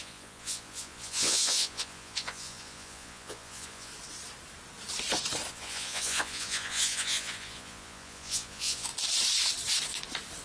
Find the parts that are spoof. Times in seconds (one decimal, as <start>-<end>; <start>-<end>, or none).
0.0-3.9; 5.5-8.9